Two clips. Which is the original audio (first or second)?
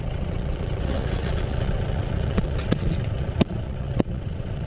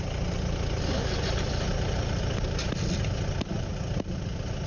second